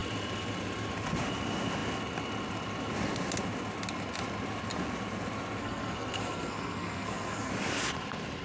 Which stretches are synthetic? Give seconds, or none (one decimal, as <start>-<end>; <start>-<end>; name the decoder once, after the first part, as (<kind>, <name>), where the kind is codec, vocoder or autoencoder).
5.6-7.5 (codec, SNAC)